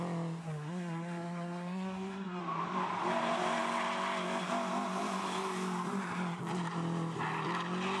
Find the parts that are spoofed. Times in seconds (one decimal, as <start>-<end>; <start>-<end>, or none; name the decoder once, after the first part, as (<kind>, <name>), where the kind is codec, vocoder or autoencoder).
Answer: 0.4-2.4 (codec, SNAC)

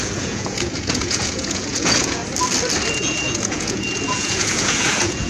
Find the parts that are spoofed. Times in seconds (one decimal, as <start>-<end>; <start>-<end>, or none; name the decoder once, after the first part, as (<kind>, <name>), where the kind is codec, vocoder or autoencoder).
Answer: 0.0-2.2 (vocoder, Vocos); 2.9-5.3

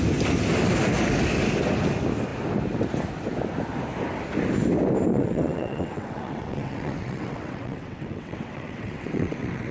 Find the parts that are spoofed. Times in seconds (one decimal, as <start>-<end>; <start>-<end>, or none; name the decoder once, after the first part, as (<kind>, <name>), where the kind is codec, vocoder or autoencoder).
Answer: 5.1-9.7 (vocoder, WaveNeXt)

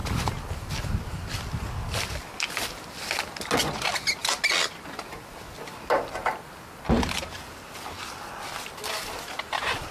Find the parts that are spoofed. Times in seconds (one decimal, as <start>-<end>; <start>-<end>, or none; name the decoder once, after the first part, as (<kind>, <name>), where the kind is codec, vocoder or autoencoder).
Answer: none

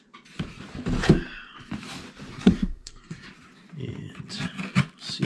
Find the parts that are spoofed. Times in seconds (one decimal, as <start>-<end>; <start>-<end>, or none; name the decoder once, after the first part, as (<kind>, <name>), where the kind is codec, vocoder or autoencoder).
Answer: 2.3-3.3 (codec, SNAC)

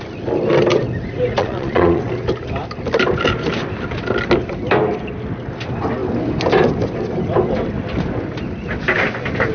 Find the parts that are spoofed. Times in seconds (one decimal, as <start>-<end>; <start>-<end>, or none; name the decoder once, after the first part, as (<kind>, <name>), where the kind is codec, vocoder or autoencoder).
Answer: 1.4-2.0 (vocoder, Vocos)

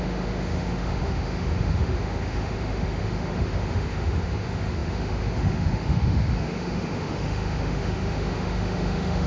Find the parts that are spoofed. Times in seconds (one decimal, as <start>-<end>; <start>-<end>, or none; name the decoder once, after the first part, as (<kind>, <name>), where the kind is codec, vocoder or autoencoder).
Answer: 0.0-9.3 (autoencoder, DAC-VAE)